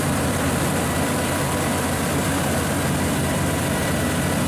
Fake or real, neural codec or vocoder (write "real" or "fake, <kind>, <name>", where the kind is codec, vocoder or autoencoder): fake, vocoder, BigVGAN v2